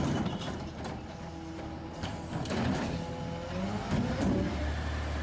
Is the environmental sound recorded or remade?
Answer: recorded